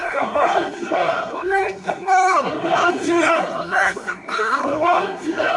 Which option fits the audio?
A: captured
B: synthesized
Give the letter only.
B